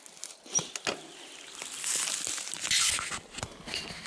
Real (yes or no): yes